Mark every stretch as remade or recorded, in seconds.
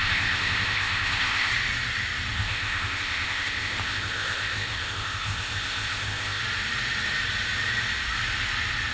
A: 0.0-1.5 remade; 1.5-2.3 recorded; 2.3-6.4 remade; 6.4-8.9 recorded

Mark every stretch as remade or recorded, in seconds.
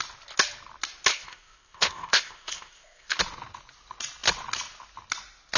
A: 0.0-1.1 recorded; 1.1-3.2 remade; 3.2-5.6 recorded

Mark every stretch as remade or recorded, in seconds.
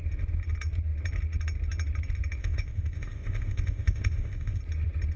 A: 0.0-2.4 recorded; 2.4-4.6 remade; 4.6-5.2 recorded